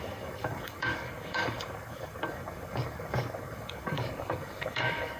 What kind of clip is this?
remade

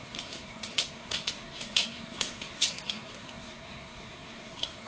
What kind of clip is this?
remade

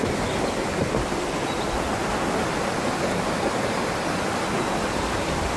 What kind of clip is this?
recorded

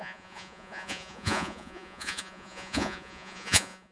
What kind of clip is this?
remade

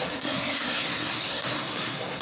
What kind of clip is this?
remade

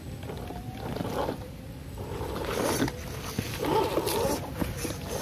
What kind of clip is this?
recorded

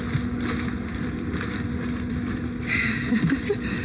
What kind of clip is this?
remade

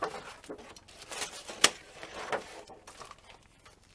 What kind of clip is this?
recorded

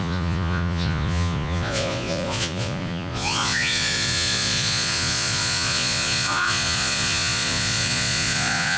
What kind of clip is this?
remade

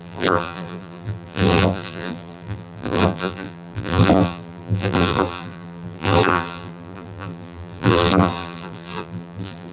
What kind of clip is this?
remade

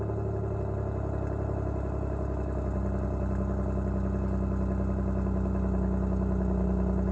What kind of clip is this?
recorded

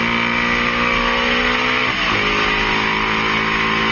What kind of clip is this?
recorded